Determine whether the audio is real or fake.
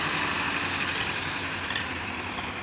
real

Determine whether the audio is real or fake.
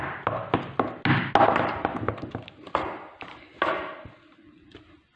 real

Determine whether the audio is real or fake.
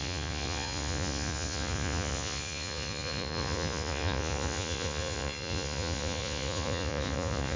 fake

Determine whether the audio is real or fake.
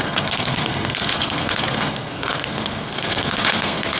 fake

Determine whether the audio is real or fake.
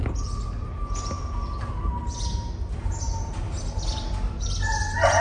real